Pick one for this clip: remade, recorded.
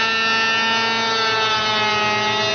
recorded